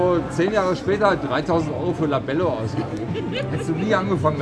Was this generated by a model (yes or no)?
no